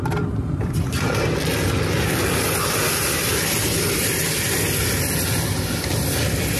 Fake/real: real